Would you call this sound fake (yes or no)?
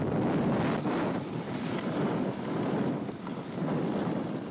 no